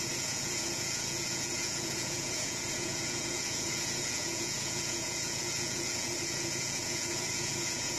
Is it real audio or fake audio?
fake